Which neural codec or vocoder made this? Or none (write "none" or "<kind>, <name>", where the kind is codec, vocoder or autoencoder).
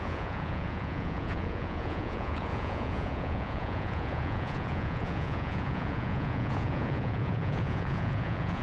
vocoder, Vocos